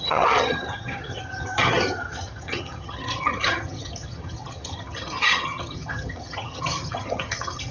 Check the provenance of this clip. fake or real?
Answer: fake